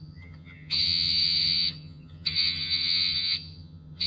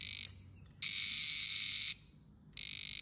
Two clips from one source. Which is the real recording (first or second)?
second